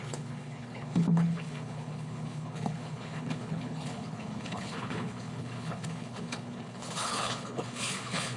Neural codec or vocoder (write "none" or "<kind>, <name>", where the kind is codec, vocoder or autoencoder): codec, HILCodec